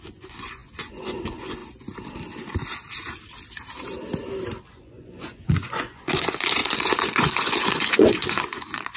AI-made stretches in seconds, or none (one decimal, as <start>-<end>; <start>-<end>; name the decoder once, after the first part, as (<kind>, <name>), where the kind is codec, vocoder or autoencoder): 0.0-1.6 (vocoder, Vocos); 4.7-9.0